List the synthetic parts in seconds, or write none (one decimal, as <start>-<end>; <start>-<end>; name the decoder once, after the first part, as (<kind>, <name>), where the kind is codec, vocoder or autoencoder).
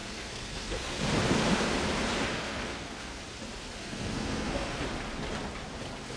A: 0.0-1.0 (codec, SNAC); 2.3-3.2; 3.8-4.8